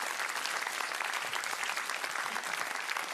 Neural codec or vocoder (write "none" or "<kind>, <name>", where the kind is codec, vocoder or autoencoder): vocoder, BigVGAN v2